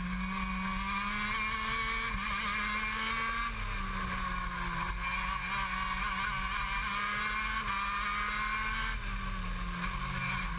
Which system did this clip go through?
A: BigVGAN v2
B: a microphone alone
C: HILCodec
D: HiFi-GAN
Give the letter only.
B